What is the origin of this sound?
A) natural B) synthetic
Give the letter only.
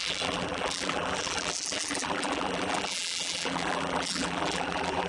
B